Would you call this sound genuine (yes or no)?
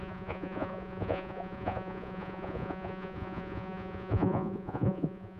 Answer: no